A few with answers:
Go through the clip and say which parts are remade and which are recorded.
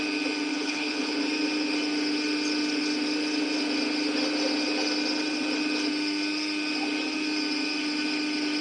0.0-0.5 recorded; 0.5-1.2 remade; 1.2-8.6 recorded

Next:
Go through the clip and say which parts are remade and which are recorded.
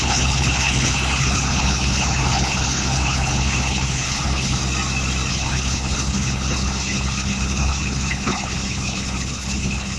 0.0-4.6 remade; 4.6-5.3 recorded; 5.3-10.0 remade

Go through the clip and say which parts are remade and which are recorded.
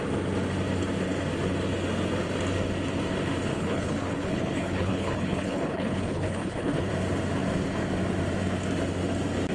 0.0-3.5 recorded; 3.5-6.9 remade; 6.9-9.5 recorded